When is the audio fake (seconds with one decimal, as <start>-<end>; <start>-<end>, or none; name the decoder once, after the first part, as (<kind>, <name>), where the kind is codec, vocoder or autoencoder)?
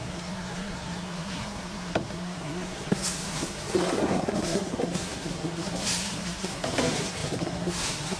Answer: 0.0-8.2 (codec, SNAC)